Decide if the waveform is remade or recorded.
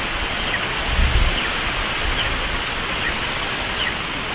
remade